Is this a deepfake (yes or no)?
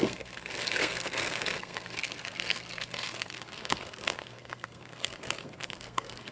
yes